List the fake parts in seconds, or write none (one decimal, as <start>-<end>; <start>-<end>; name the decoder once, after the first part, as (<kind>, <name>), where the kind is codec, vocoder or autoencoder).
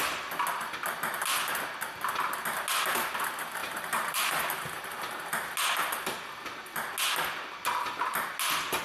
3.6-4.9 (vocoder, BigVGAN v2)